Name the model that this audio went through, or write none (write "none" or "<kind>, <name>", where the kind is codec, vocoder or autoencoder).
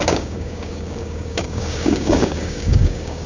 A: codec, DAC